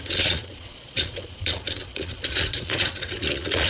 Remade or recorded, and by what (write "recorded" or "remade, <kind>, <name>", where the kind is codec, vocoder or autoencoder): remade, vocoder, Vocos